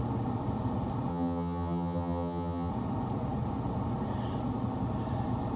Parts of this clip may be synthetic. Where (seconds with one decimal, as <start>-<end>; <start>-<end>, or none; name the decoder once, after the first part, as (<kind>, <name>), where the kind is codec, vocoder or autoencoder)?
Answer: 1.1-2.7 (vocoder, HiFi-GAN)